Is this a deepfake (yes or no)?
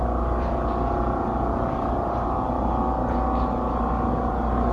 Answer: no